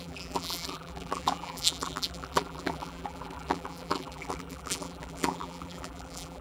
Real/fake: fake